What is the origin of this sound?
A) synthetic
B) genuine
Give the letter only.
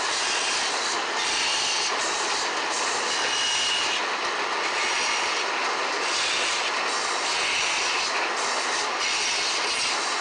B